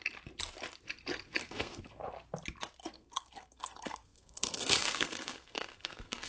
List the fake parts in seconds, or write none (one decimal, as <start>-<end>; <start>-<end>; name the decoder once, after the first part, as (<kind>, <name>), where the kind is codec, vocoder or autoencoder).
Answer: 1.4-2.0 (codec, SNAC); 2.8-6.3